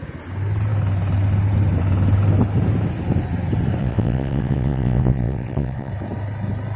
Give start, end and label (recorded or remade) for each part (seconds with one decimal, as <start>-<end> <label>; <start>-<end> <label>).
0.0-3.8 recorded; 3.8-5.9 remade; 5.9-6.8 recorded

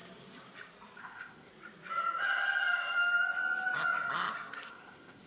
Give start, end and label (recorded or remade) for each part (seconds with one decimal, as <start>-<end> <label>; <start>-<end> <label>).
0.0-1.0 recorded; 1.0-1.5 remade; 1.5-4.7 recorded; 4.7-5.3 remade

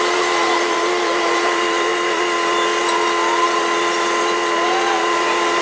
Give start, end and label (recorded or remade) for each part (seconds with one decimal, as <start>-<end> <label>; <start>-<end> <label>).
0.0-1.9 remade; 1.9-5.6 recorded

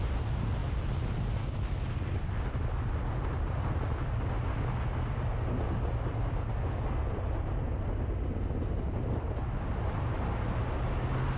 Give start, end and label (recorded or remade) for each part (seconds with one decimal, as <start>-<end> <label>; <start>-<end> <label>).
0.0-11.4 recorded

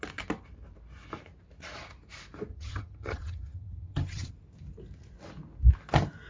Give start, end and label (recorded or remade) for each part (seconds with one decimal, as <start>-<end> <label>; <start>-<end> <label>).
0.0-2.5 recorded; 2.5-4.3 remade; 4.3-6.3 recorded

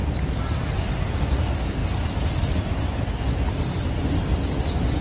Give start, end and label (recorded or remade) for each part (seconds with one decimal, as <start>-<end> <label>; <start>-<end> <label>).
0.0-5.0 recorded

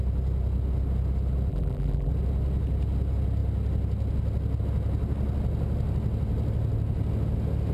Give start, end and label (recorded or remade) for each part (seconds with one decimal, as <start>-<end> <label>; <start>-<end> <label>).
0.0-1.5 recorded; 1.5-2.1 remade; 2.1-7.7 recorded

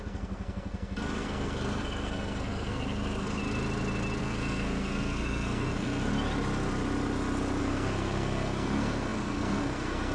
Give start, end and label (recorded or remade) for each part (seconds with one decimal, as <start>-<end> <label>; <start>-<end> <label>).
0.0-3.4 remade; 3.4-4.2 recorded; 4.2-6.1 remade; 6.1-7.6 recorded; 7.6-10.1 remade